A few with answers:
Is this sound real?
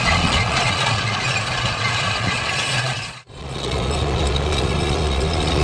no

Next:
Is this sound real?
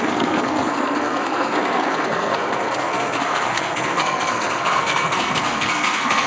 no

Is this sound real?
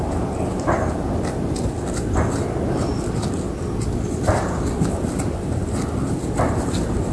yes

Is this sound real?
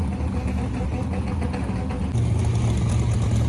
yes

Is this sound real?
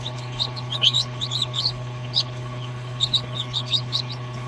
no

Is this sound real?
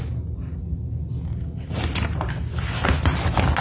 yes